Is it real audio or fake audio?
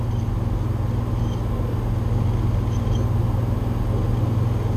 real